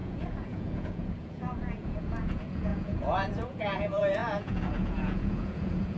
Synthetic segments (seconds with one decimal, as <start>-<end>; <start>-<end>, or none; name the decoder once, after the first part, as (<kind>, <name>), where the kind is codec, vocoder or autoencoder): 0.0-6.0 (vocoder, Vocos)